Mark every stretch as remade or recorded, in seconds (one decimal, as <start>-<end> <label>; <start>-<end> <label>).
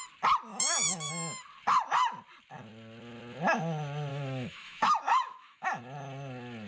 0.0-0.5 recorded; 0.5-1.1 remade; 1.1-4.1 recorded; 4.1-5.8 remade; 5.8-6.7 recorded